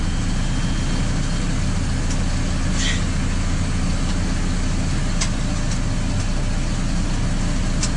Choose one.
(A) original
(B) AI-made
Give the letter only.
A